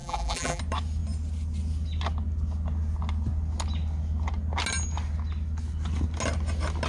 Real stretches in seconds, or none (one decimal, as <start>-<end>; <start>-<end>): 0.6-6.9